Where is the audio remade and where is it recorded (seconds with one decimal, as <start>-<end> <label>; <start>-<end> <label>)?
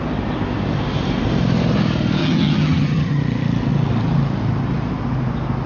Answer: 0.0-2.2 recorded; 2.2-3.2 remade; 3.2-5.7 recorded